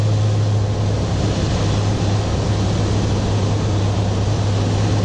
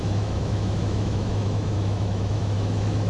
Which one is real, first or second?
first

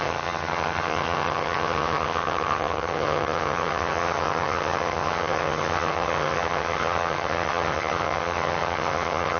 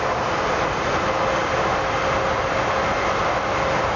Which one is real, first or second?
second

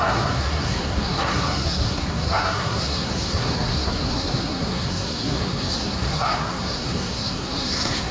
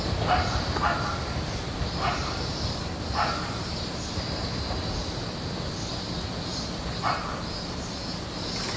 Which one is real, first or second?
second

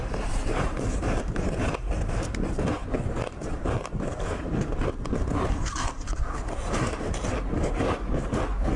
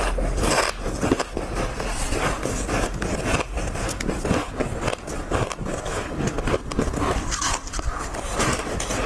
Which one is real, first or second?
second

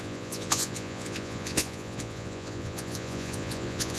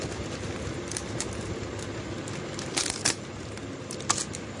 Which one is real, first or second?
second